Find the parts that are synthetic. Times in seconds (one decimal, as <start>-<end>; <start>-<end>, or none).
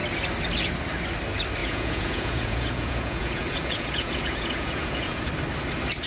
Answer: 1.6-5.3